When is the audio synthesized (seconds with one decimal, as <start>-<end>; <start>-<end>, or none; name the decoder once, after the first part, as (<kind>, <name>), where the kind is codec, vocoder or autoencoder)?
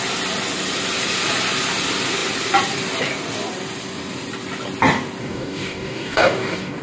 5.2-6.8 (codec, DAC)